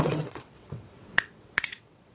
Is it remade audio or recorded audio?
remade